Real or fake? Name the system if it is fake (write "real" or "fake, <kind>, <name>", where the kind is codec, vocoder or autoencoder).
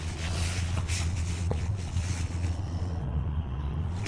fake, vocoder, Vocos